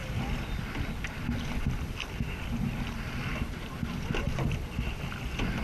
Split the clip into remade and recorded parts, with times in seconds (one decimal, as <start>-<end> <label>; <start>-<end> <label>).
0.0-3.3 recorded; 3.3-5.6 remade